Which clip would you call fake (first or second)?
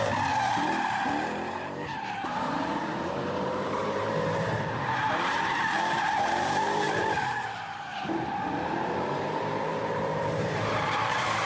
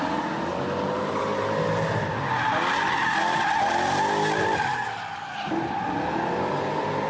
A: first